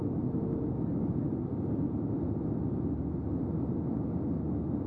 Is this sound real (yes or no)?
yes